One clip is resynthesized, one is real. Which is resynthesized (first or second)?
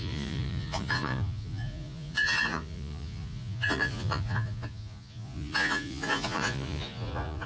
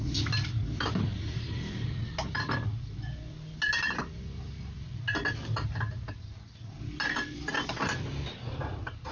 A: first